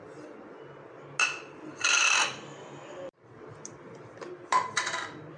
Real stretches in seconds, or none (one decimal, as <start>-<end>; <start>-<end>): 0.0-2.2